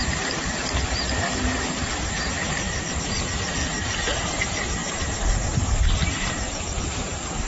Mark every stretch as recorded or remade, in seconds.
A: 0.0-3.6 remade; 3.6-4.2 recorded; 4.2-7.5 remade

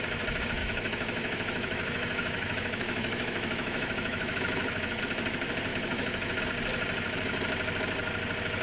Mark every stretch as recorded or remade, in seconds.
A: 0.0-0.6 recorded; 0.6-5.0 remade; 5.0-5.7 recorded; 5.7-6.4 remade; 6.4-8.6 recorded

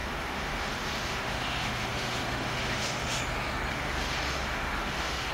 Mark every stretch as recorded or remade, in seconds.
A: 0.0-3.2 remade; 3.2-3.7 recorded; 3.7-5.3 remade

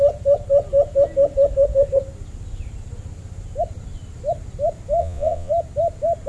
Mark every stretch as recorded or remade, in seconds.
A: 0.0-5.0 recorded; 5.0-5.5 remade; 5.5-6.3 recorded

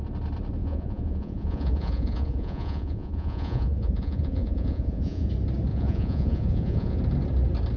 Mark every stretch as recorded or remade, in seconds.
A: 0.0-0.6 recorded; 0.6-5.3 remade; 5.3-5.7 recorded; 5.7-7.0 remade; 7.0-7.8 recorded

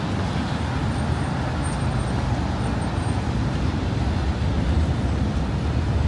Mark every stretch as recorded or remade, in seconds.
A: 0.0-6.1 recorded